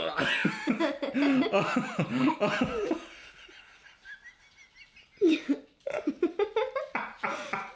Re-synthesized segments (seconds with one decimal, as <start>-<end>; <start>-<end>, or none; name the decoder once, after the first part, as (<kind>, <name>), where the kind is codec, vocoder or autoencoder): none